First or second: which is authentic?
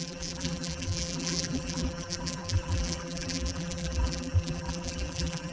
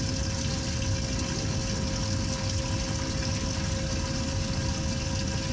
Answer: second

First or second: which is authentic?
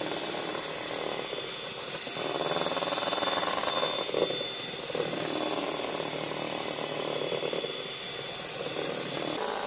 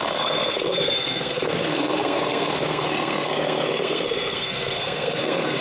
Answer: first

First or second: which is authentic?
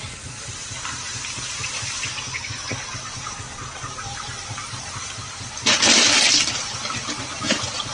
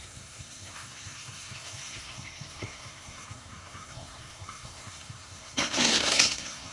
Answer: first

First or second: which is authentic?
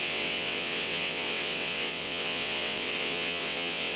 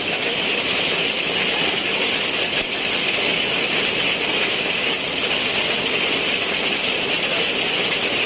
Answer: second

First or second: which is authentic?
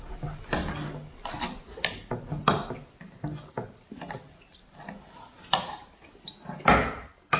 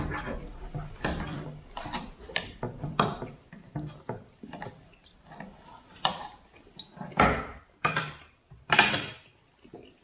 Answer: first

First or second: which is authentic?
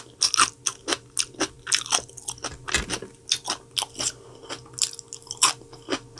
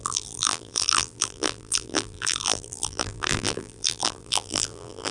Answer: first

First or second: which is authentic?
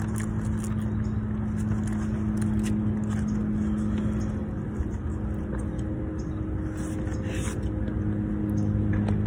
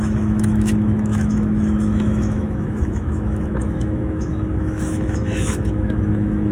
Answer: first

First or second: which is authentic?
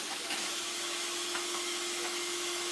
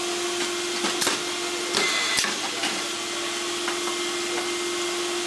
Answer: second